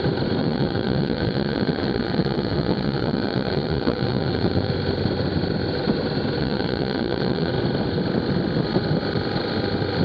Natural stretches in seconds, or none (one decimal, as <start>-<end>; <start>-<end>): 0.0-0.4; 4.7-6.4; 7.5-10.0